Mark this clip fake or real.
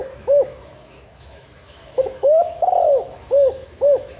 fake